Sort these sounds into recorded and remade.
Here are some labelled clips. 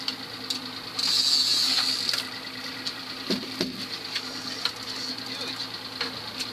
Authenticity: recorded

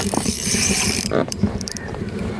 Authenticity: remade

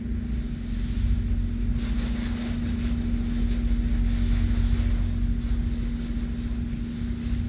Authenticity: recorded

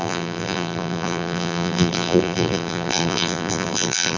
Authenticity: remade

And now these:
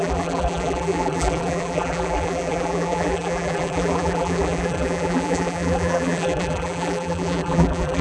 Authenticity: remade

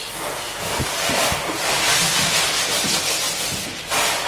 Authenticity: recorded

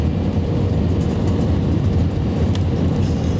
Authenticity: recorded